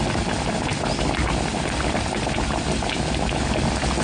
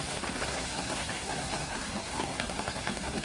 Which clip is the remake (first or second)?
second